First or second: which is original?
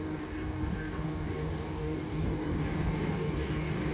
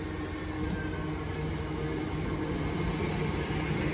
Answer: second